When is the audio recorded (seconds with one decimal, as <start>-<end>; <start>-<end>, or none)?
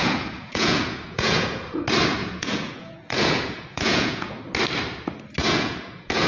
1.8-2.2; 4.4-5.4